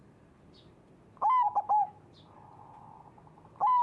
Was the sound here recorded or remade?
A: recorded